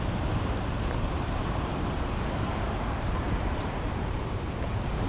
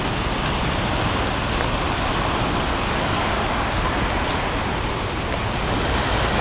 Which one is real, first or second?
second